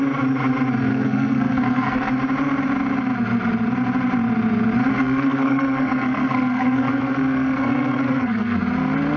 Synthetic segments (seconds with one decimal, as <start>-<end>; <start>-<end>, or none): 0.9-2.1; 4.9-8.6